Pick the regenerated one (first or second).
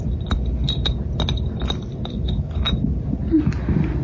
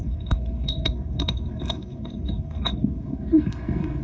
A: second